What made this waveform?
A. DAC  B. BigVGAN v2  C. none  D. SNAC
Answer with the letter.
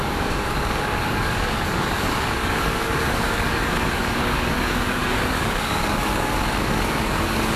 A